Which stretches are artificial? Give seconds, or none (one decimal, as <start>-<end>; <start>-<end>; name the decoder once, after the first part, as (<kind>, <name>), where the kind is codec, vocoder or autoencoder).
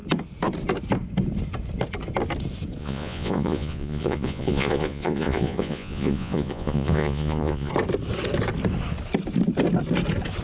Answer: 2.8-7.7 (vocoder, Vocos)